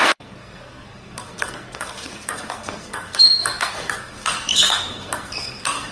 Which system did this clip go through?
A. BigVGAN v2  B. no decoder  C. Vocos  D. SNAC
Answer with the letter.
D